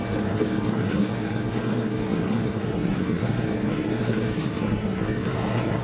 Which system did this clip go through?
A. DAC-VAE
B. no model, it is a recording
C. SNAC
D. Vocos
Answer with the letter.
C